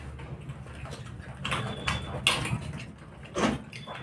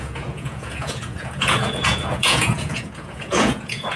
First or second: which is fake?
second